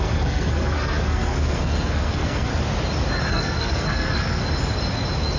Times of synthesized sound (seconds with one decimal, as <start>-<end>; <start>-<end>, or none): 0.0-2.5; 3.3-4.4